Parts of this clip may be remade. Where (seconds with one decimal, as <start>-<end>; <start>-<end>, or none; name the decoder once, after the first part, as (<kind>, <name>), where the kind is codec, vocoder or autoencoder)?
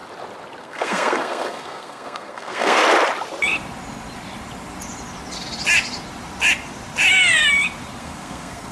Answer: 0.6-2.8 (codec, SNAC); 8.0-8.7